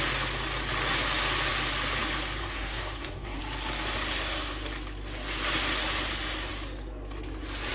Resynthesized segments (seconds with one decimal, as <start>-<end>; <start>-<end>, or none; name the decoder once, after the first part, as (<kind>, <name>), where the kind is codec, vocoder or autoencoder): 2.4-3.4 (codec, SNAC)